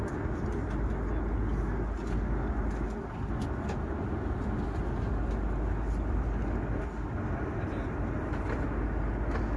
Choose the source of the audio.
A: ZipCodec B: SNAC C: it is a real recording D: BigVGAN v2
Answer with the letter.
C